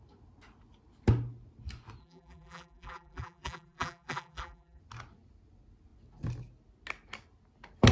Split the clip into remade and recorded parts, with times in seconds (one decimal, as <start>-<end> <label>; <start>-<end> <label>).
0.0-2.0 recorded; 2.0-4.8 remade; 4.8-7.9 recorded